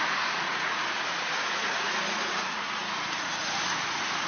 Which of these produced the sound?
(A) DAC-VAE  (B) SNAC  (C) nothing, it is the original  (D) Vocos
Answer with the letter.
D